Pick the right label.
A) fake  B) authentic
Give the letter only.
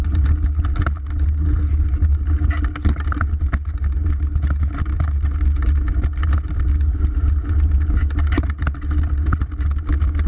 B